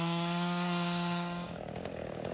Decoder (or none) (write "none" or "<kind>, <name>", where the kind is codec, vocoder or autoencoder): codec, DAC